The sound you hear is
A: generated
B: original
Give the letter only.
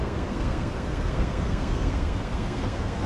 A